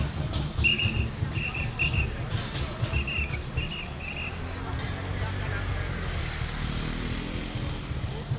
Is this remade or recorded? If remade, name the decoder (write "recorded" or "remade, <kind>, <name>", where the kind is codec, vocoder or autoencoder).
recorded